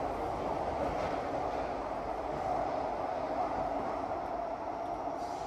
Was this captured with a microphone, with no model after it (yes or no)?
yes